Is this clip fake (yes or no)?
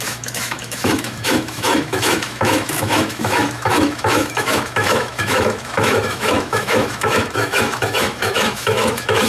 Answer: yes